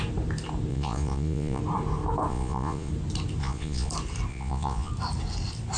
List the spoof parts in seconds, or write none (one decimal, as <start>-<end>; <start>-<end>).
0.7-1.6; 2.3-2.9; 3.4-3.9; 4.3-4.9